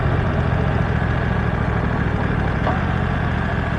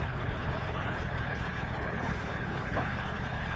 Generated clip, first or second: second